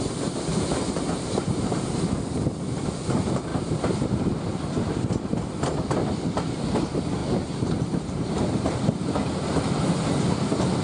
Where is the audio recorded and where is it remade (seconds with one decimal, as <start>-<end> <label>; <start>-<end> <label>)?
0.0-0.5 recorded; 0.5-1.9 remade; 1.9-3.5 recorded; 3.5-4.2 remade; 4.2-7.2 recorded; 7.2-9.8 remade; 9.8-10.8 recorded